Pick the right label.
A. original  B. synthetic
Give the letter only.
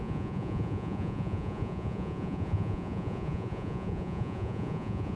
B